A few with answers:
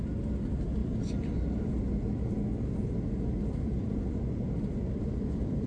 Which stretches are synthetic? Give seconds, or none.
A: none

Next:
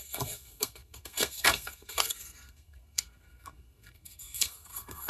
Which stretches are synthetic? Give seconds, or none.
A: 0.0-5.1 (codec, SNAC)

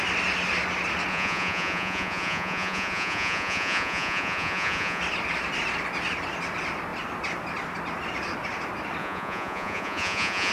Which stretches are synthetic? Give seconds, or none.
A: 1.1-5.0 (vocoder, Vocos); 9.0-10.5

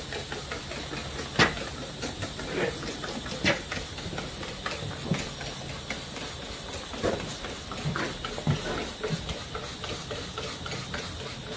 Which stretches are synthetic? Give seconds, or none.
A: none

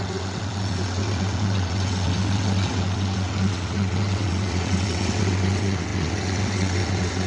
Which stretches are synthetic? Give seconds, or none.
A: 0.0-7.3 (vocoder, WaveNeXt)

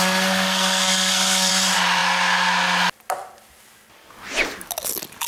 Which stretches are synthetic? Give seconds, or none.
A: 0.0-1.5 (codec, SNAC)

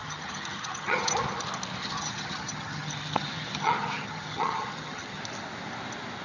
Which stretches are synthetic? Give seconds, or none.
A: 0.0-1.1 (vocoder, HiFi-GAN); 1.8-5.2

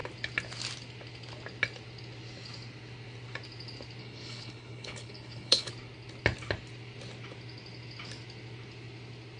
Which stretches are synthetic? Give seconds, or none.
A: 4.0-5.7 (codec, HILCodec)